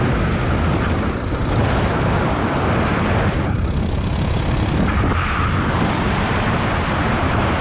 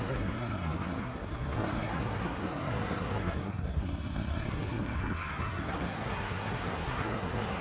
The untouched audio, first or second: first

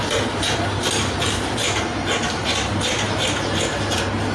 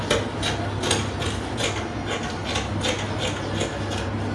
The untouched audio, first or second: second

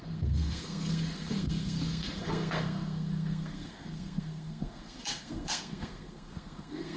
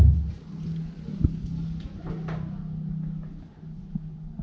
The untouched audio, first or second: second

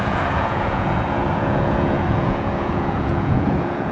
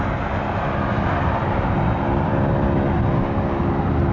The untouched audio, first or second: second